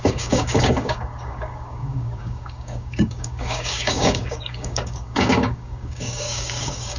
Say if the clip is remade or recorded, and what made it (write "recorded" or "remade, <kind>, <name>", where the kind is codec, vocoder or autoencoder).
remade, codec, DAC